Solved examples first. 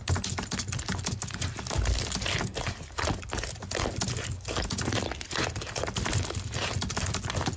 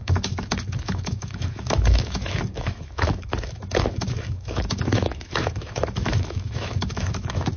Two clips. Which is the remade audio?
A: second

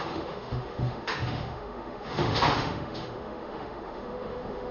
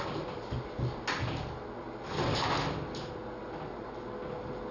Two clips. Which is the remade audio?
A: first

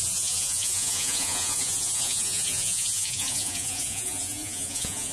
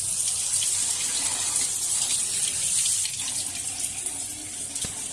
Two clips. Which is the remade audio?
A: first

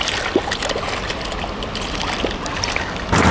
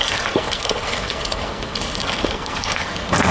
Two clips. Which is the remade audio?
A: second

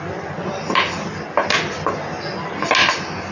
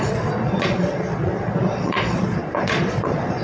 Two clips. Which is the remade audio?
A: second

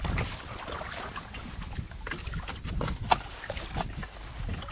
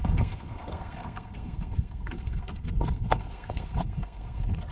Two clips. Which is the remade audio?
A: second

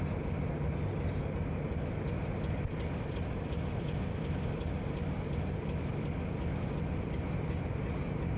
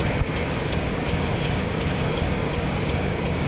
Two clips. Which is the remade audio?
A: second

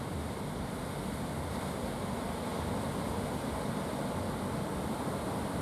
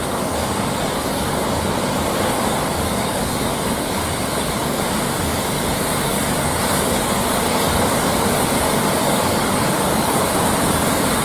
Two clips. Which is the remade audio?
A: second